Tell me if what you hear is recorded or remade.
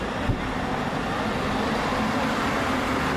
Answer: recorded